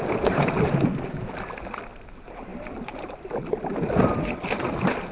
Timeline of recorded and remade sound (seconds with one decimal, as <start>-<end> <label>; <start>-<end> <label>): 0.0-5.1 recorded